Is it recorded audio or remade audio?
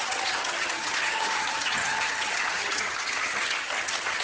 remade